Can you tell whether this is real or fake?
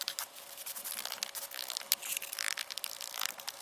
real